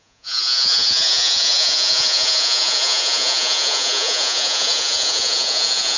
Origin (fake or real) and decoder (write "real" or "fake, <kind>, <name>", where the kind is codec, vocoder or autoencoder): fake, vocoder, Vocos